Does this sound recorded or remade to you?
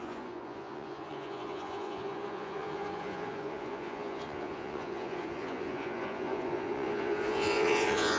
remade